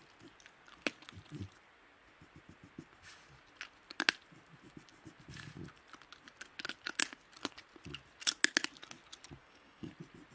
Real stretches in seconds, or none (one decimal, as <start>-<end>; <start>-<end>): 0.0-9.4; 9.9-10.3